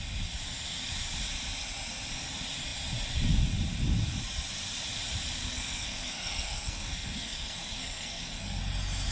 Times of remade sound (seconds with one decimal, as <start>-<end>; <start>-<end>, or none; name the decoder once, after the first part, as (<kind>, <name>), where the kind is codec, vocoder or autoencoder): 5.4-8.6 (codec, SNAC)

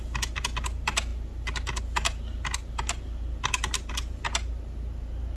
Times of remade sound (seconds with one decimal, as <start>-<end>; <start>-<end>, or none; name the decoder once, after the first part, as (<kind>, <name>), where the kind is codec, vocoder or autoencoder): none

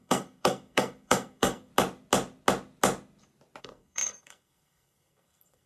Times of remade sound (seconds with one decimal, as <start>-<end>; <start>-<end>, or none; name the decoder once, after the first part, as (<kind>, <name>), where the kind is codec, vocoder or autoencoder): 0.0-1.7 (codec, SNAC); 3.6-5.7

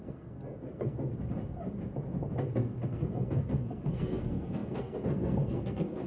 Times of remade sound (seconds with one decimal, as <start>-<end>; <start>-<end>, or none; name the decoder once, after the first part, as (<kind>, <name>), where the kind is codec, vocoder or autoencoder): 0.0-1.1 (codec, SNAC); 2.4-6.1

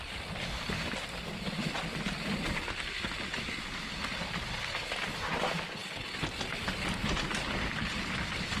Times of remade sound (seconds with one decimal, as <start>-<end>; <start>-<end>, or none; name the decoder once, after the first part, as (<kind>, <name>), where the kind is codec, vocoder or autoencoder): none

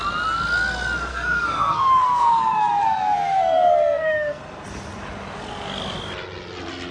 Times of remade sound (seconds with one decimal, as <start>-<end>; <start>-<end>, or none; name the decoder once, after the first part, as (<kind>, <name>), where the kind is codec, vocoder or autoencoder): 1.1-4.4 (codec, SNAC)